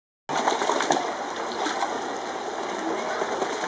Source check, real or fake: real